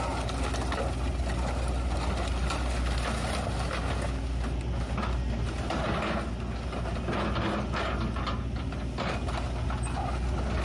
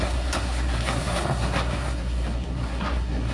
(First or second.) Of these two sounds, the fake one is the second